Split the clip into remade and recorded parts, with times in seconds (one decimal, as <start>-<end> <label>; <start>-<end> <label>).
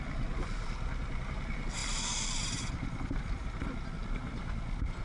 0.0-5.0 recorded